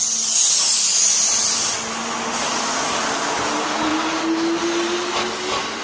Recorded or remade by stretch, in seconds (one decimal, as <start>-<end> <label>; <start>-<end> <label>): 0.0-5.8 recorded